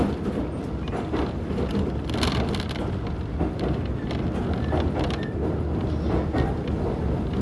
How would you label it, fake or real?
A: real